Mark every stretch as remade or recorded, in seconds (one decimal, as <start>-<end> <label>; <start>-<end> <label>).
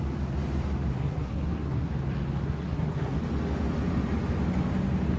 0.0-0.9 recorded; 0.9-1.9 remade; 1.9-2.4 recorded; 2.4-3.2 remade; 3.2-5.2 recorded